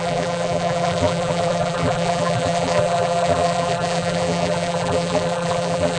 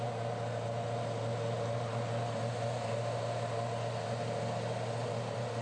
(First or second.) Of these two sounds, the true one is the second